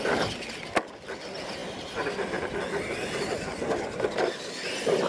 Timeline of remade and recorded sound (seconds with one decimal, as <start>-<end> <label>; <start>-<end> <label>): 0.0-1.6 remade; 1.6-5.1 recorded

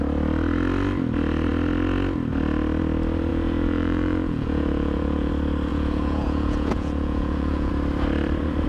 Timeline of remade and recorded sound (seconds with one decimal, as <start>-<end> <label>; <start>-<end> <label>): 0.0-3.3 recorded; 3.3-5.3 remade; 5.3-5.7 recorded; 5.7-7.7 remade; 7.7-8.7 recorded

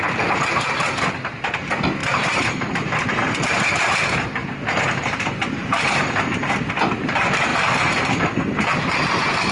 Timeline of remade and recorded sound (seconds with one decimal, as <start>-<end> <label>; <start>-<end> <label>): 0.0-2.0 recorded; 2.0-3.1 remade; 3.1-4.4 recorded; 4.4-6.5 remade; 6.5-7.5 recorded; 7.5-8.9 remade; 8.9-9.5 recorded

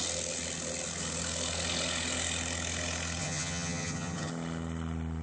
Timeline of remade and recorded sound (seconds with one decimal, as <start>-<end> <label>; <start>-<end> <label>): 0.0-3.2 recorded; 3.2-4.3 remade; 4.3-5.2 recorded

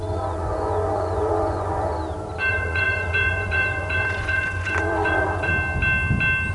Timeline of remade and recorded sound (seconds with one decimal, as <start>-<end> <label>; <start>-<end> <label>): 0.0-1.9 remade; 1.9-2.5 recorded; 2.5-5.5 remade; 5.5-6.5 recorded

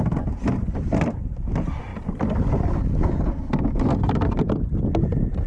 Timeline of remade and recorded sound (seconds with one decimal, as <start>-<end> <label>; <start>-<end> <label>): 0.0-5.5 recorded